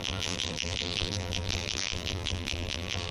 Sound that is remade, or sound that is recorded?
remade